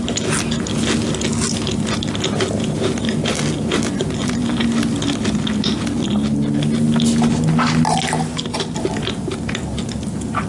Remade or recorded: recorded